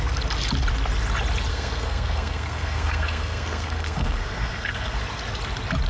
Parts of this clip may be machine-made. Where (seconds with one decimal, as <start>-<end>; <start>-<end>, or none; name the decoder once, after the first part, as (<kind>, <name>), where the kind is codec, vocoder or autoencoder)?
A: 1.5-5.0 (codec, SNAC)